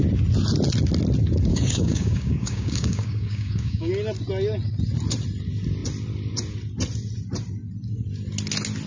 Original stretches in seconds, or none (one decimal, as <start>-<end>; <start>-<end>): 0.0-1.5; 3.9-8.9